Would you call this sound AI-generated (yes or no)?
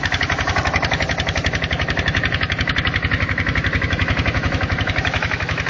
yes